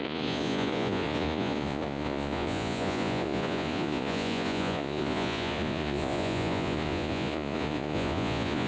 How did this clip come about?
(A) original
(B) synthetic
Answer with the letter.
B